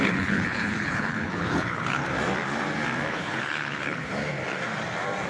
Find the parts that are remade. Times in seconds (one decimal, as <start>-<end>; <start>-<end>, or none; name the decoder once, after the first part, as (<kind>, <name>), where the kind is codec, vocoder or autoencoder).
0.0-2.0 (codec, HILCodec); 3.1-4.2